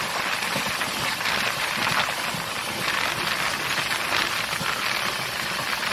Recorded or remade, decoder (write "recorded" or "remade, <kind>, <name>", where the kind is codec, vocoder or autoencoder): recorded